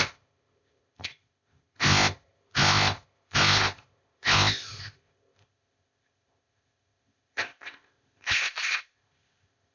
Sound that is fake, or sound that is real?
fake